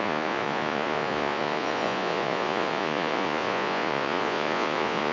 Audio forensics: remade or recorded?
remade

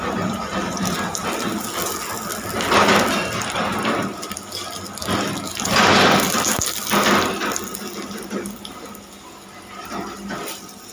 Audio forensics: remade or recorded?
recorded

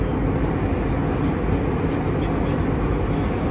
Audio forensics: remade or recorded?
recorded